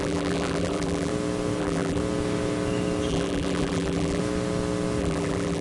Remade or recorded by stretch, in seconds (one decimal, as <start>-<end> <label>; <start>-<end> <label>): 0.0-1.1 remade; 1.1-1.6 recorded; 1.6-2.0 remade; 2.0-3.1 recorded; 3.1-4.2 remade; 4.2-5.0 recorded; 5.0-5.6 remade